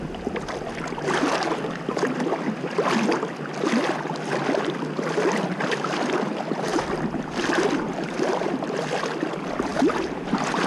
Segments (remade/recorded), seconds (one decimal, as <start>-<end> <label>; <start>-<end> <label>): 0.0-6.7 recorded; 6.7-9.0 remade; 9.0-10.7 recorded